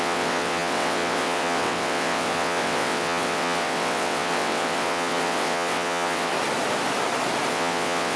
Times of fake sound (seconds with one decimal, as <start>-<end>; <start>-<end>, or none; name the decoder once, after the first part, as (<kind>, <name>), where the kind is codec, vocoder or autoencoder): 0.0-6.3 (vocoder, WaveNeXt); 7.5-8.2